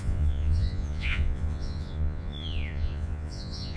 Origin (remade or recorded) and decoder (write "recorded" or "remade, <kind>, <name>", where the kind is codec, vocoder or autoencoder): remade, vocoder, Vocos